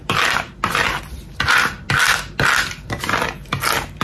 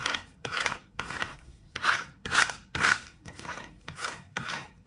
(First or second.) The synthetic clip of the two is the second